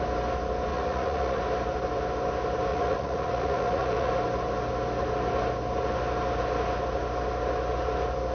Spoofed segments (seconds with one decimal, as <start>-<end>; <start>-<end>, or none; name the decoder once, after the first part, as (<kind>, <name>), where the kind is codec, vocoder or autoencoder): 0.7-1.4 (vocoder, Vocos); 2.7-4.1